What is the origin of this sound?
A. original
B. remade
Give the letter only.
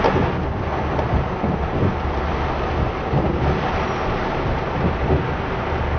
A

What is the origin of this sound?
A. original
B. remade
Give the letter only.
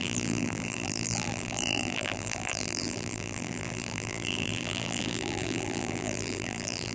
B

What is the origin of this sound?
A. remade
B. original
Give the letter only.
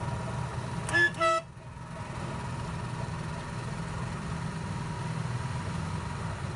B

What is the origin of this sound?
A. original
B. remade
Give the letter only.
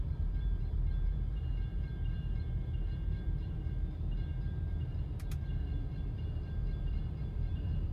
B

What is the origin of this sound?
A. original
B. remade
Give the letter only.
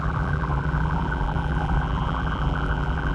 B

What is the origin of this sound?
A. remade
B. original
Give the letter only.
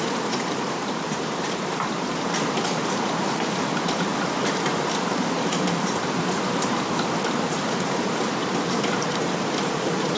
A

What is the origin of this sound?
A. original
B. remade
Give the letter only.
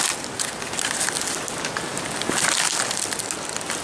A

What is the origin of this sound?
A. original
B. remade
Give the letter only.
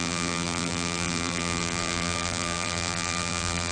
B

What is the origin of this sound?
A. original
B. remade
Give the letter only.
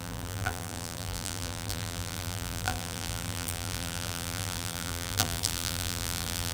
B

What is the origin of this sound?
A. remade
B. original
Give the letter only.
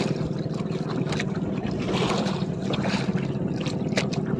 B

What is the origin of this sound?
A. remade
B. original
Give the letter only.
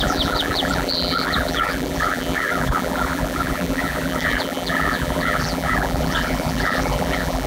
A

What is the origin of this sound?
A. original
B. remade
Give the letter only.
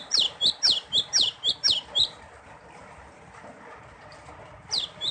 A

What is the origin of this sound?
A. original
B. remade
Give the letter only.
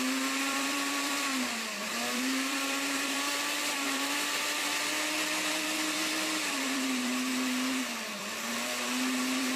B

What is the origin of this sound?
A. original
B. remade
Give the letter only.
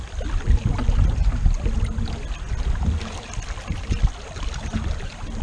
A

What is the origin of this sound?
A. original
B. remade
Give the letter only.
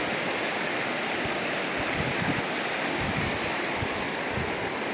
A